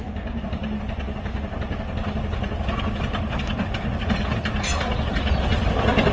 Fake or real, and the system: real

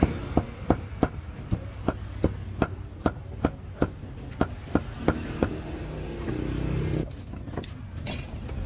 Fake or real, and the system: real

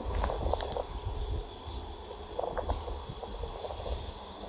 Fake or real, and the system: real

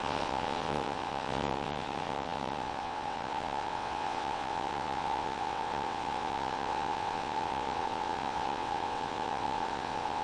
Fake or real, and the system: fake, vocoder, WaveNeXt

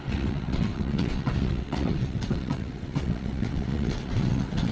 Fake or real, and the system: fake, vocoder, WaveNeXt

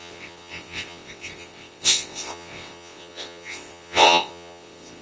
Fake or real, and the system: fake, vocoder, WaveNeXt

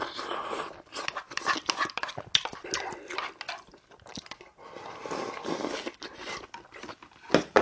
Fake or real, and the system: real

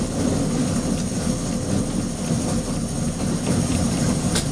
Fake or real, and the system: real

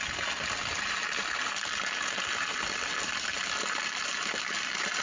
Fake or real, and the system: real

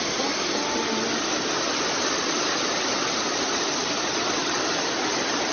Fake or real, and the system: real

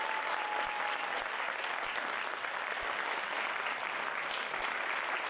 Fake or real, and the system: real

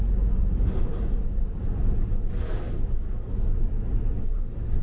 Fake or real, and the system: real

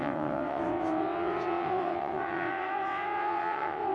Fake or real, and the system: fake, vocoder, WaveNeXt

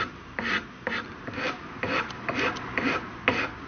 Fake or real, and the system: real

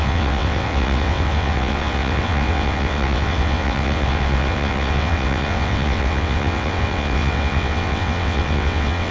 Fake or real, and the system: fake, vocoder, WaveNeXt